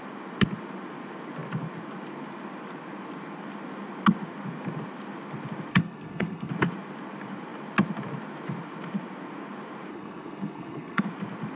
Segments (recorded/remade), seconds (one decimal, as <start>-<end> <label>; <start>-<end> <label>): 0.0-5.7 recorded; 5.7-6.5 remade; 6.5-9.9 recorded; 9.9-11.0 remade; 11.0-11.6 recorded